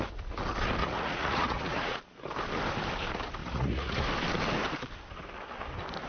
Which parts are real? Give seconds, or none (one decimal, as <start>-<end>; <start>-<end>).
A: 0.0-0.8; 2.0-3.4; 4.0-6.1

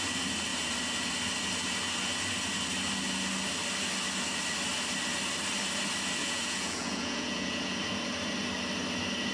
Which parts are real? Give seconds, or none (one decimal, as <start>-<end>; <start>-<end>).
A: 0.0-6.2; 7.8-9.3

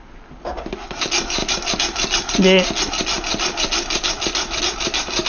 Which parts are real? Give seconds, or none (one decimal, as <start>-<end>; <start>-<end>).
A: 0.0-5.3